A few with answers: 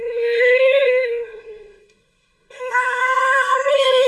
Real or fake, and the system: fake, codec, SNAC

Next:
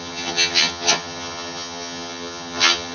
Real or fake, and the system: fake, vocoder, HiFi-GAN